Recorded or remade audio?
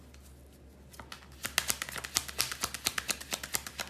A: recorded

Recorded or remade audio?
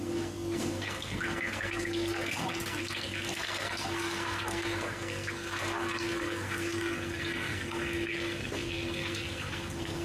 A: remade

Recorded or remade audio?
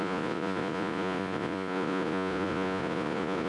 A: remade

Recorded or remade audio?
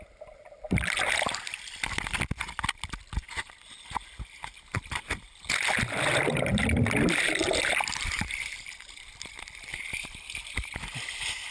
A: recorded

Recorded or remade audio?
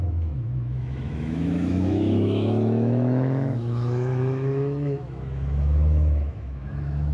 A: remade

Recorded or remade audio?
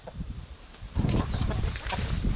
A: remade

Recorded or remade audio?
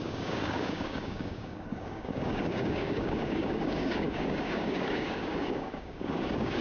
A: remade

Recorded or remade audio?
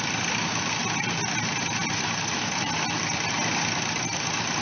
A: recorded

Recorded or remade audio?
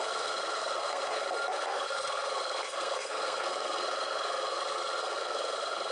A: remade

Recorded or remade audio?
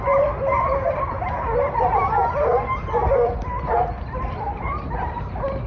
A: recorded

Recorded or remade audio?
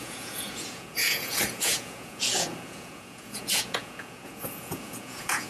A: remade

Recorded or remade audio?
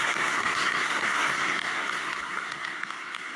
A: remade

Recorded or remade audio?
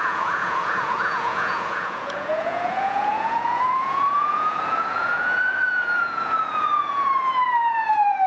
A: remade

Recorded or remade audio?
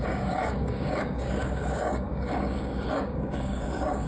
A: remade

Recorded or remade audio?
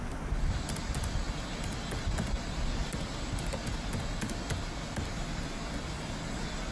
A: recorded